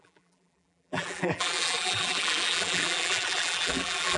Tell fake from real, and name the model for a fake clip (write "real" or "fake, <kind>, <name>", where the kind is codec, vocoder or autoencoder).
fake, vocoder, BigVGAN v2